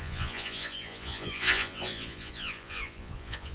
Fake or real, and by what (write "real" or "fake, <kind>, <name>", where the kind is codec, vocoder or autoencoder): fake, vocoder, Vocos